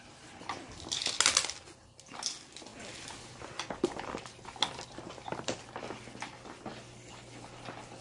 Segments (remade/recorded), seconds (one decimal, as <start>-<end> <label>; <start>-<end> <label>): 0.0-8.0 recorded